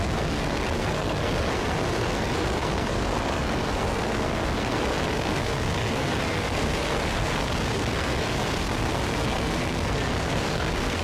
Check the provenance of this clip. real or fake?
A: fake